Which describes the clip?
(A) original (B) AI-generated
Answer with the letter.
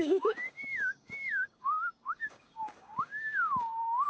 B